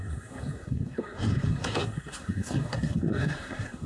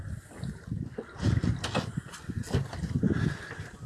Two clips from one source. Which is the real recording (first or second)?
second